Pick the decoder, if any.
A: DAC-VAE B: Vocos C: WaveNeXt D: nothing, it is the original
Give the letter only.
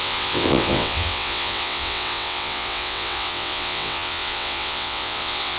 C